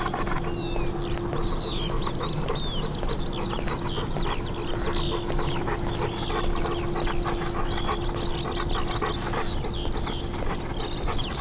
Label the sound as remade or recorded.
recorded